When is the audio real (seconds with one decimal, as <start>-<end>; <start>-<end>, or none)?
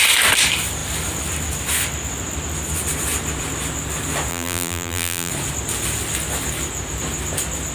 0.0-4.3; 5.3-7.7